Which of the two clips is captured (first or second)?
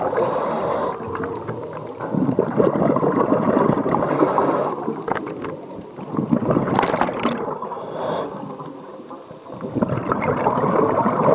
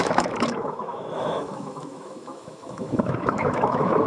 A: first